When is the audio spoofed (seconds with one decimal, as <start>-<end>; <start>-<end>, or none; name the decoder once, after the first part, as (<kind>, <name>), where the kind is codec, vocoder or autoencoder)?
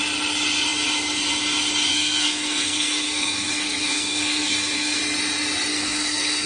1.9-5.0 (codec, SNAC); 5.7-6.5